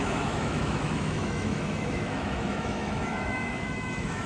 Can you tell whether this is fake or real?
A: fake